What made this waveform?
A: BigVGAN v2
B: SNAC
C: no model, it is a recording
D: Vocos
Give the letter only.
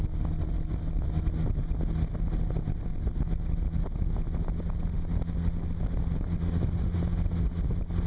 C